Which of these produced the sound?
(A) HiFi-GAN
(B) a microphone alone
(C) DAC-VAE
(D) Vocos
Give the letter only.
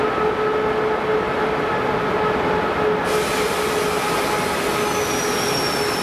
B